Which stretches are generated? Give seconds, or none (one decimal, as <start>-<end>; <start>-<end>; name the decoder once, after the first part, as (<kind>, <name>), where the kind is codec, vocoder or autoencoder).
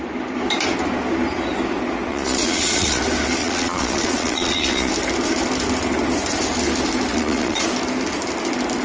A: 2.1-3.0 (vocoder, Vocos); 3.4-4.9; 7.1-7.6